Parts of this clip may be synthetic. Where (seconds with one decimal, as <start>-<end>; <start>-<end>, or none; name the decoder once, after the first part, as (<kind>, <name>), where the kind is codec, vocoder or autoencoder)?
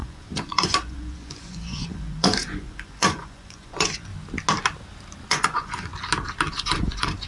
0.0-4.1 (vocoder, Vocos); 5.3-5.9; 6.5-7.3